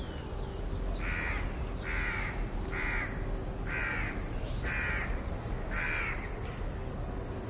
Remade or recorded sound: recorded